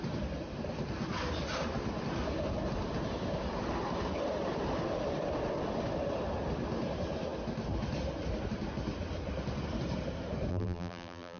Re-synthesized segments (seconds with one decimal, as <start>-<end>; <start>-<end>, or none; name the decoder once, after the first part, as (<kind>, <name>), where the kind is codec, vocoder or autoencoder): 10.5-11.4 (vocoder, BigVGAN v2)